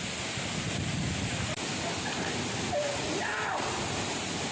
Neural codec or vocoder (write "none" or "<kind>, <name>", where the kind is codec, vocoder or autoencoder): none